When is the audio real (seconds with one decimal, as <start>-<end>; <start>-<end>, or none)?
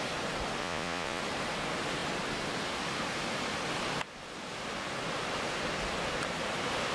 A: 0.0-0.6; 1.2-6.9